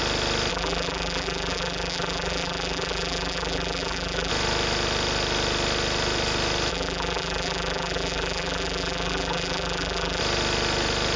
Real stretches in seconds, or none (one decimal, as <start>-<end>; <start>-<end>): 0.0-0.5; 4.3-6.7; 10.2-11.2